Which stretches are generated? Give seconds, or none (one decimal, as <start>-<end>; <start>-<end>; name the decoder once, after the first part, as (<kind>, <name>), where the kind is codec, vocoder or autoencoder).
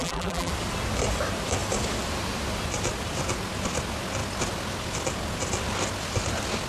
0.0-0.5 (vocoder, BigVGAN v2)